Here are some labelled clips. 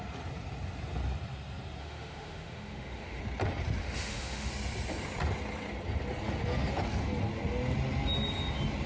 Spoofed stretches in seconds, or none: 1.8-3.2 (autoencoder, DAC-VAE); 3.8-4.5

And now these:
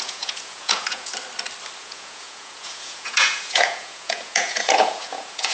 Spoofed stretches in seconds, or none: 0.0-1.1 (vocoder, Vocos); 1.8-5.5